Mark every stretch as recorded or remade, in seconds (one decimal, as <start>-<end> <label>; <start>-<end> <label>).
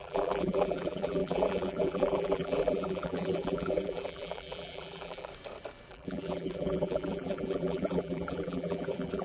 0.0-5.3 remade; 5.3-5.9 recorded; 5.9-9.2 remade